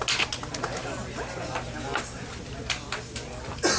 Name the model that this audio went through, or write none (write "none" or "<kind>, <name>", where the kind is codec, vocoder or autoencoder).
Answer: none